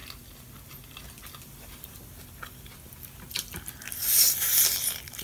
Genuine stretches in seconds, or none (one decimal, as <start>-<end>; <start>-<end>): 0.0-5.2